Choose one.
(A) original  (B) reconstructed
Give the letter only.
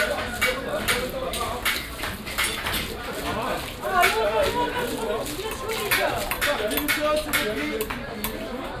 A